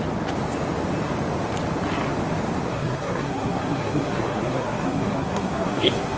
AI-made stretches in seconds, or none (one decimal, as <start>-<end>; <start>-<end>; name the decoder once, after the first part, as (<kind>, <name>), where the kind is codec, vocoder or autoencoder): 2.7-6.2 (codec, SNAC)